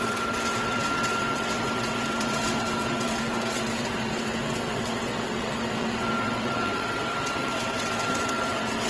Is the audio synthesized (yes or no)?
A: yes